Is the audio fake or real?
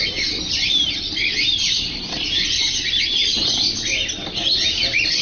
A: fake